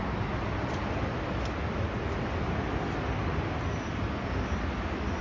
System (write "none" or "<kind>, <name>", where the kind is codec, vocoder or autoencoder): none